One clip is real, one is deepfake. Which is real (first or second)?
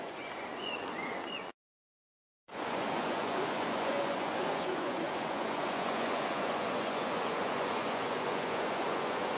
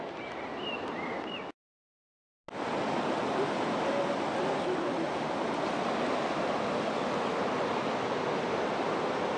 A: second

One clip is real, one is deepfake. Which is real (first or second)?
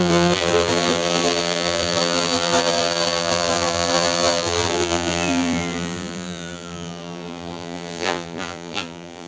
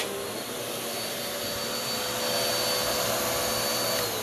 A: second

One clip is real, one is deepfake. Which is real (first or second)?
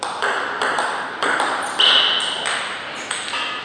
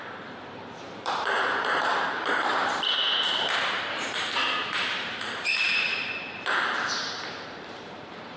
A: first